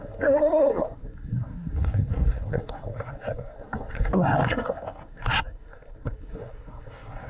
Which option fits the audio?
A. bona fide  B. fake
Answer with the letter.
B